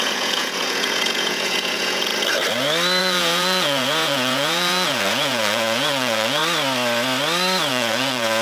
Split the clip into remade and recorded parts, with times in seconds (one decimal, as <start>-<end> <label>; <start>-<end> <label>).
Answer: 0.0-2.1 remade; 2.1-3.0 recorded; 3.0-6.4 remade; 6.4-7.7 recorded; 7.7-8.4 remade